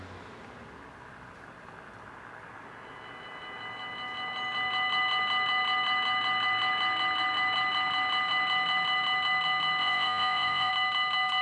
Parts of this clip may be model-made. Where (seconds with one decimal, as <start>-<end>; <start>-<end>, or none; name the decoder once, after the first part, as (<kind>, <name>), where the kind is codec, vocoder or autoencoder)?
9.8-10.7 (vocoder, Vocos)